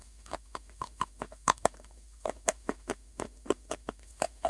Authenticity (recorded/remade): remade